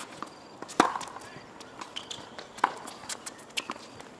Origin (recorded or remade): recorded